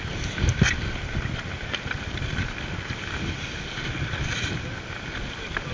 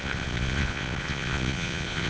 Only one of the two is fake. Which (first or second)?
second